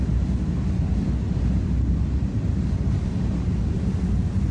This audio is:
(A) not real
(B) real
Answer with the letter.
B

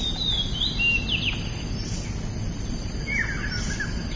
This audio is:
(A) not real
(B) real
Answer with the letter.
B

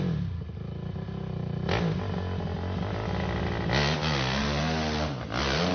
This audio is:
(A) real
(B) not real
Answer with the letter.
A